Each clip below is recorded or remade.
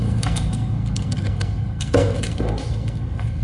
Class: remade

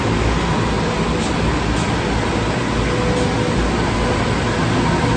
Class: recorded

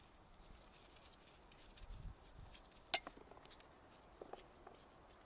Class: recorded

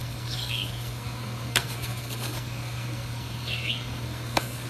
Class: remade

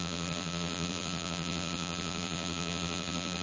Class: remade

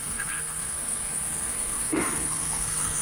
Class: remade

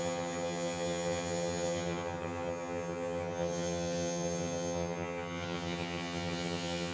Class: remade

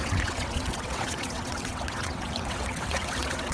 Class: remade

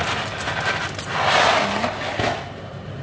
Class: recorded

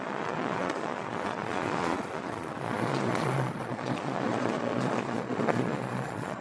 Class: remade